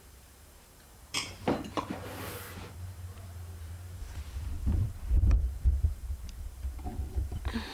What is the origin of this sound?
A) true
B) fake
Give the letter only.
B